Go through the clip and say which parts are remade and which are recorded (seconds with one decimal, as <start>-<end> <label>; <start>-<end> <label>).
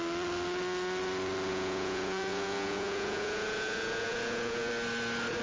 0.0-1.5 recorded; 1.5-4.7 remade; 4.7-5.4 recorded